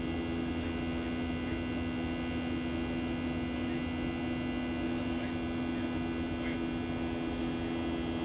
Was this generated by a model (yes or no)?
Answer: no